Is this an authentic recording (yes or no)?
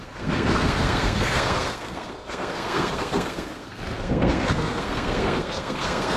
no